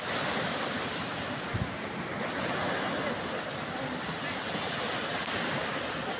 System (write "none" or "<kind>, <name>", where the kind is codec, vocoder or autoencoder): none